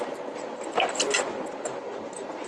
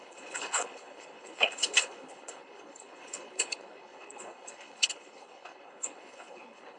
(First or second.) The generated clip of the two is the second